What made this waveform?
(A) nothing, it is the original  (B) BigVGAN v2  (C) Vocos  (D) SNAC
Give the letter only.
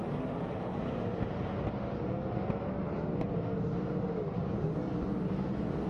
A